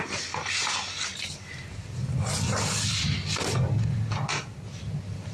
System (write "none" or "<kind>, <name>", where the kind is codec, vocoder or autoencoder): none